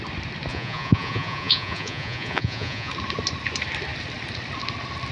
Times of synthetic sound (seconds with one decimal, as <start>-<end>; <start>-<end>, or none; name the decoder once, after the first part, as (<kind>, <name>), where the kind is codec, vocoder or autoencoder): 0.5-2.9 (vocoder, Vocos)